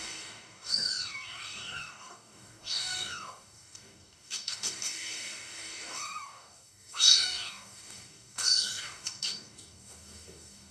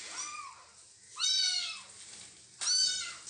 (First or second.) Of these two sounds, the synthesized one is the first